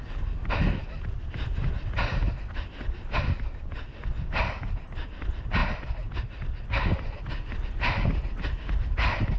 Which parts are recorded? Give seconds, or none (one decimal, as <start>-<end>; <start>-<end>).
0.0-9.4